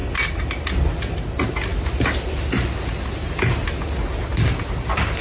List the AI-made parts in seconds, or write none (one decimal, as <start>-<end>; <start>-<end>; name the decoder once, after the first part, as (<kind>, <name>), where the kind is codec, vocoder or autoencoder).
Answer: none